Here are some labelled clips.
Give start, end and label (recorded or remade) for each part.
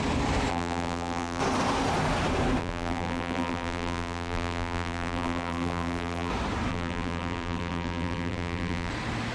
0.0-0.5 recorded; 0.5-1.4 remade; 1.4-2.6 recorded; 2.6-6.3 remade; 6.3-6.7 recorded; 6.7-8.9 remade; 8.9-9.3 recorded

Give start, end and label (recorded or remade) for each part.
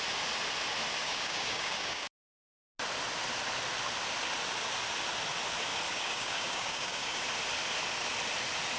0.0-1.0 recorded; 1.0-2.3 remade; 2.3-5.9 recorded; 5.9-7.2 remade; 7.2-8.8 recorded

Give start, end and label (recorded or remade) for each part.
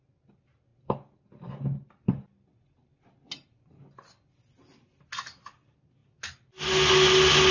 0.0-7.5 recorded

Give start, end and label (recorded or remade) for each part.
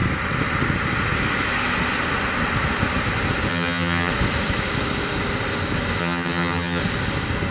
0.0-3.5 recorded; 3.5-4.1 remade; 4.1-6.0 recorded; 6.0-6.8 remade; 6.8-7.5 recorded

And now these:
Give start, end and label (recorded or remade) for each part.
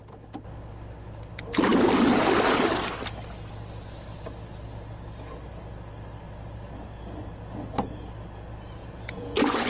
0.0-8.8 recorded; 8.8-9.7 remade